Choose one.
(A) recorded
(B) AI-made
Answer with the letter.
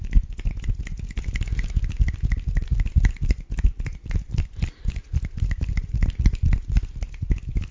A